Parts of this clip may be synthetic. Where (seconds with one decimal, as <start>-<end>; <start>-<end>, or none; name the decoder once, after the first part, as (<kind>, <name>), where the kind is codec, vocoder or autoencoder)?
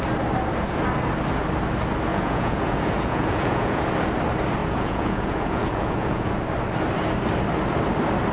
2.1-3.8 (vocoder, Vocos); 4.6-6.3